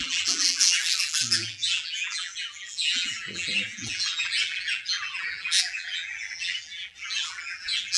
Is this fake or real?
fake